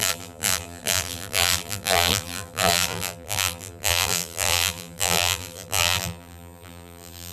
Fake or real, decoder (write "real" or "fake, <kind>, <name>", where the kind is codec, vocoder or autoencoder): fake, vocoder, BigVGAN v2